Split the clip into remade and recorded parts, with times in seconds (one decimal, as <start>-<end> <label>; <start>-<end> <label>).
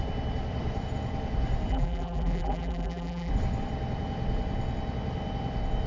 0.0-1.7 recorded; 1.7-3.3 remade; 3.3-5.9 recorded